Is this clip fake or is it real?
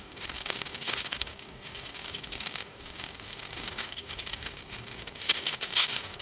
fake